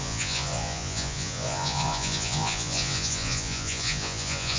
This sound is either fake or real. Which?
fake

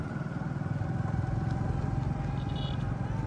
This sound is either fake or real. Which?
real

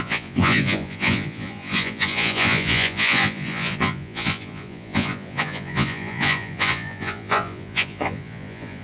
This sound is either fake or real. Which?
fake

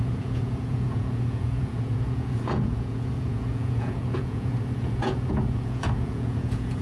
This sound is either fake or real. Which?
fake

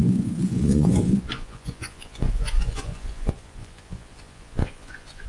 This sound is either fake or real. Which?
fake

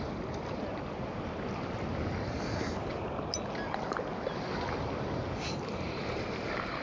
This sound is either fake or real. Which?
real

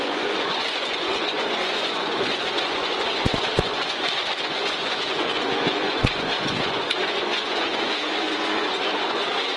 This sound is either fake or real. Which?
fake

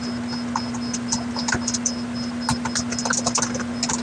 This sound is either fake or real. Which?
real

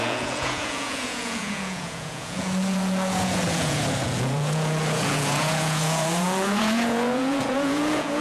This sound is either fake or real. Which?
fake